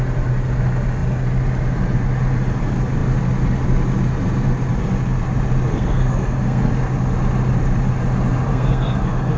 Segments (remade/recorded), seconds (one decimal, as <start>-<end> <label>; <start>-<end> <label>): 0.0-5.7 recorded; 5.7-6.7 remade; 6.7-8.5 recorded; 8.5-9.4 remade